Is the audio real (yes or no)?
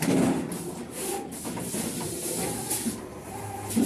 no